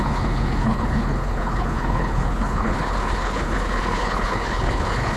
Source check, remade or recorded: remade